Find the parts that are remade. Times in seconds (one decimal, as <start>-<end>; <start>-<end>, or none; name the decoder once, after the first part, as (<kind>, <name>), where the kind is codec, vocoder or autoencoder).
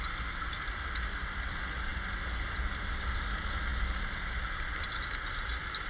none